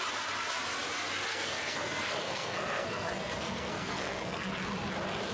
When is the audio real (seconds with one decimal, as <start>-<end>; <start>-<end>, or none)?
0.0-1.3; 4.5-5.3

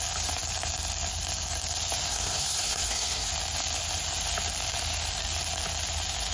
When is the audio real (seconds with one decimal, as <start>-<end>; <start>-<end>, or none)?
0.0-2.1; 3.3-6.3